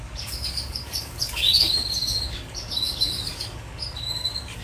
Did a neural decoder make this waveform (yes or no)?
yes